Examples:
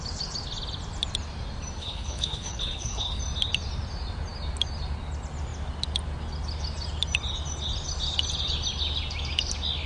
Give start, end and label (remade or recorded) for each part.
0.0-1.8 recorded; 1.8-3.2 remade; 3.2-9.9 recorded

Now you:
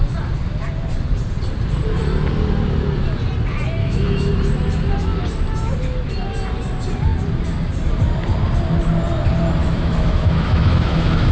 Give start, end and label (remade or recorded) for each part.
0.0-3.8 recorded; 3.8-4.3 remade; 4.3-9.6 recorded; 9.6-11.3 remade

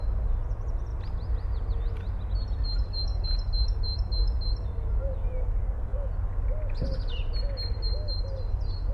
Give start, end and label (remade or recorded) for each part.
0.0-3.1 recorded; 3.1-4.0 remade; 4.0-8.9 recorded

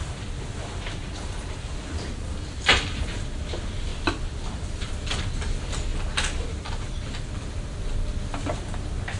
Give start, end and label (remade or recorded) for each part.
0.0-1.0 recorded; 1.0-3.3 remade; 3.3-3.9 recorded; 3.9-4.9 remade; 4.9-5.9 recorded; 5.9-7.0 remade; 7.0-9.2 recorded

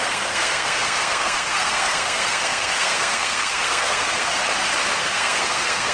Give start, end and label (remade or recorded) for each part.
0.0-4.4 remade; 4.4-5.0 recorded; 5.0-5.9 remade

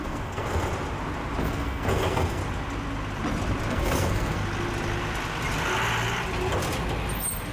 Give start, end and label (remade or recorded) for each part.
0.0-0.7 remade; 0.7-1.4 recorded; 1.4-2.4 remade; 2.4-3.7 recorded; 3.7-4.4 remade; 4.4-7.5 recorded

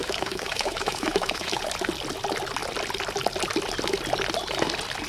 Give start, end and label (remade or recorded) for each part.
0.0-1.6 remade; 1.6-5.1 recorded